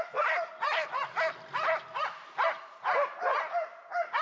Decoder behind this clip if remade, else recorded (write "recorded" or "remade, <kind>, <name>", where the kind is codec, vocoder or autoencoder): recorded